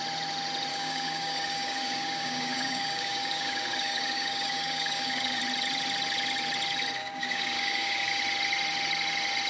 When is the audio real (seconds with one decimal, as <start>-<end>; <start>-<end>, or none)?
0.0-0.7; 5.4-7.0; 8.2-9.5